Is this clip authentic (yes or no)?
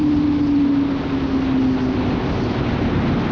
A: yes